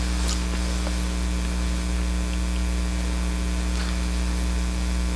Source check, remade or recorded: recorded